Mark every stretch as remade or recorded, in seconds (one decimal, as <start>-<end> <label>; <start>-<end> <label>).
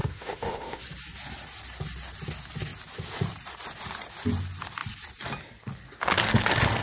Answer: 0.0-0.8 remade; 0.8-6.8 recorded